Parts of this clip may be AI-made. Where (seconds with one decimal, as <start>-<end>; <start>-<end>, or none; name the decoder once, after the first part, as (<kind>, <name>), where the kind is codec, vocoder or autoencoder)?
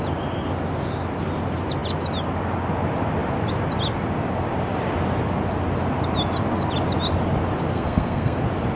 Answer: 7.7-8.4 (codec, SNAC)